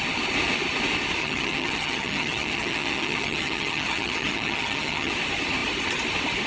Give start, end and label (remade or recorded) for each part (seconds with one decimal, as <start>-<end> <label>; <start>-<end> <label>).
0.0-1.2 recorded; 1.2-5.1 remade; 5.1-6.5 recorded